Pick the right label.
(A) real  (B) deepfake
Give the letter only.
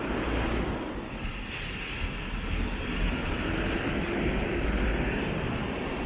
A